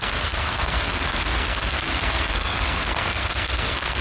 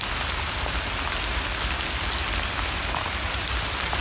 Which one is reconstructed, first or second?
first